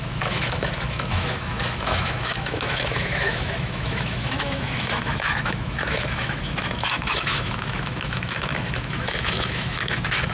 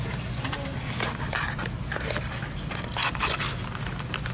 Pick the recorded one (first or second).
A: second